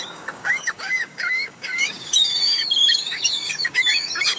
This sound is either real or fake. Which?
fake